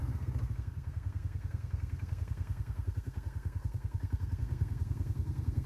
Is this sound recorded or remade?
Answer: remade